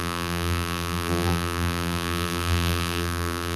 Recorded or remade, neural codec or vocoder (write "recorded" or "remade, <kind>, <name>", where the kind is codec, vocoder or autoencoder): remade, vocoder, BigVGAN v2